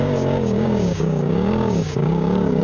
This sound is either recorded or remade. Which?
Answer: remade